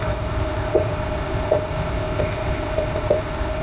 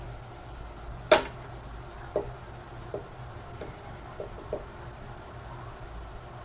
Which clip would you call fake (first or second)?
first